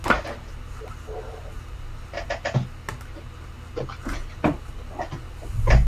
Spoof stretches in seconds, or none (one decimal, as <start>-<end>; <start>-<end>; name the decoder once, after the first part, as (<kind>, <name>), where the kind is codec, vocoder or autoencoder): none